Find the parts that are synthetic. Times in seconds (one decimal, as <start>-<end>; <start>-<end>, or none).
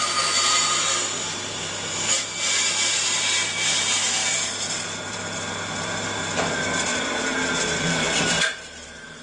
0.0-6.9; 7.8-9.2